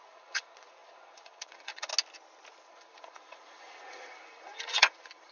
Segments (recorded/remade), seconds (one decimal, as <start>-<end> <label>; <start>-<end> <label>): 0.0-1.9 remade; 1.9-2.5 recorded; 2.5-5.3 remade